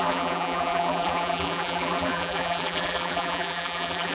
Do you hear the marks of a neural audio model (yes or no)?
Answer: yes